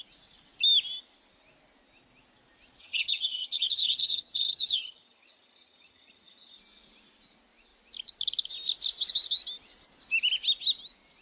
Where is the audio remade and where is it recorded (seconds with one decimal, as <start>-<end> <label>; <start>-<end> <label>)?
0.0-2.8 recorded; 2.8-6.6 remade; 6.6-11.2 recorded